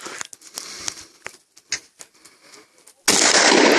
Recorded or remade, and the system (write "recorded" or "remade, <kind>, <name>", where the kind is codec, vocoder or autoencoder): recorded